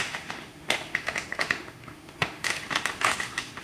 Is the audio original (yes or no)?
no